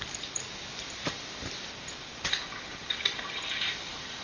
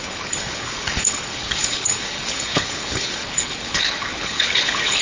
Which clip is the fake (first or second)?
second